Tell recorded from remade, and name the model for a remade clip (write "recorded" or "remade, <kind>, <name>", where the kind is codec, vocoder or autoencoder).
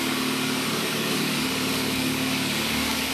remade, codec, DAC